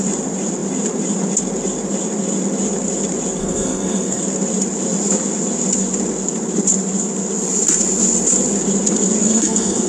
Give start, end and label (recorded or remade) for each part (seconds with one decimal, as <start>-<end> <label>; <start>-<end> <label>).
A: 0.0-3.4 recorded; 3.4-4.2 remade; 4.2-9.2 recorded; 9.2-9.9 remade